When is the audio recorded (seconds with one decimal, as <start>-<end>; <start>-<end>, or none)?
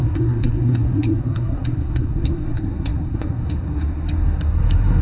none